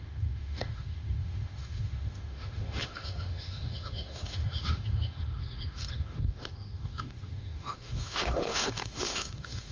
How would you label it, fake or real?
fake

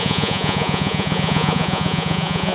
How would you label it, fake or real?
fake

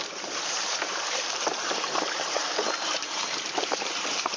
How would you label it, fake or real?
fake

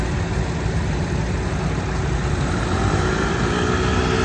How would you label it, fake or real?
real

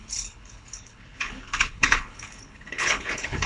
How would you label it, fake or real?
fake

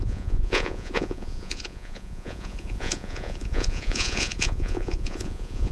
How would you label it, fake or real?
fake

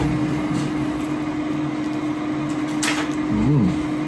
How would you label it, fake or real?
real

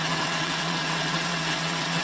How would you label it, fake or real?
fake